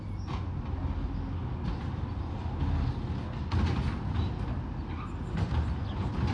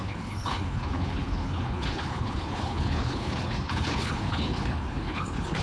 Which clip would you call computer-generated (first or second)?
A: second